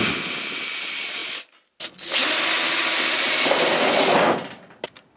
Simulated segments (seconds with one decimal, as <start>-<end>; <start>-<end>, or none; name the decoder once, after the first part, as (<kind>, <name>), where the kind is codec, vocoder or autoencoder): none